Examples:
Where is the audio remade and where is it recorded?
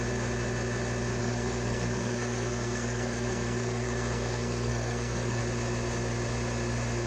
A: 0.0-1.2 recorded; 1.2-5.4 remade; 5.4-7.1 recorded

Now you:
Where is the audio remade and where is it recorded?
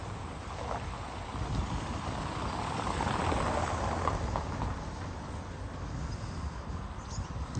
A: 0.0-7.6 recorded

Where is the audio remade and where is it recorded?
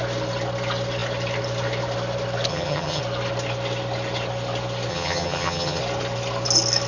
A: 0.0-2.5 recorded; 2.5-3.0 remade; 3.0-4.9 recorded; 4.9-5.8 remade; 5.8-6.9 recorded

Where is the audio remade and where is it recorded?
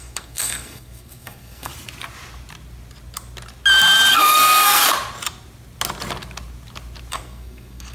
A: 0.0-1.7 remade; 1.7-4.1 recorded; 4.1-4.8 remade; 4.8-7.1 recorded; 7.1-7.9 remade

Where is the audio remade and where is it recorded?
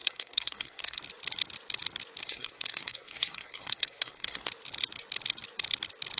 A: 0.0-1.0 remade; 1.0-2.2 recorded; 2.2-4.5 remade; 4.5-6.2 recorded